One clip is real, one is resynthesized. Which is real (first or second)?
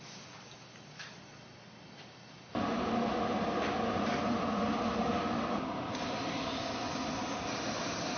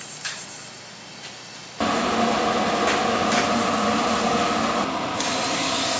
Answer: second